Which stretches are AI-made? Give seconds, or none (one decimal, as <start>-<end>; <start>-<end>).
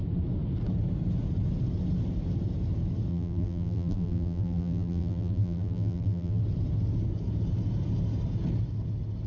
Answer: 3.1-6.4